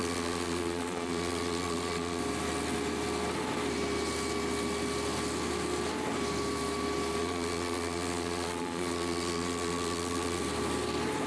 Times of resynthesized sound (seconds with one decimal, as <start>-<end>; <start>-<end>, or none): 0.0-2.2; 7.2-10.4